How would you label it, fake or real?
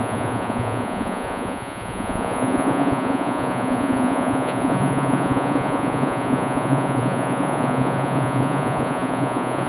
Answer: fake